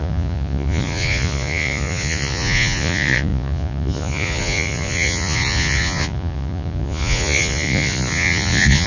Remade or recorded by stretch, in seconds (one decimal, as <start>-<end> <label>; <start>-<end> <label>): 0.0-8.9 remade